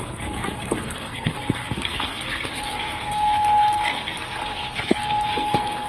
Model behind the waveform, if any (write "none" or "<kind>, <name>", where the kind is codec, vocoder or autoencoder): codec, SNAC